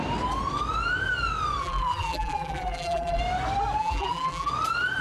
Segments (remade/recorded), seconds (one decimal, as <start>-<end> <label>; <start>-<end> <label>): 0.0-1.6 recorded; 1.6-3.2 remade; 3.2-3.8 recorded; 3.8-4.5 remade; 4.5-5.0 recorded